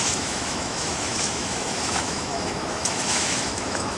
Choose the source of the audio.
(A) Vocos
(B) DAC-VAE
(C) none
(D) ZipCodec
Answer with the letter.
B